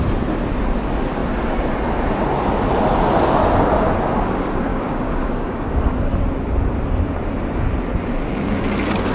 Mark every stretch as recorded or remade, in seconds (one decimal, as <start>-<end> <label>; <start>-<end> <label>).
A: 0.0-4.7 recorded; 4.7-6.1 remade; 6.1-9.1 recorded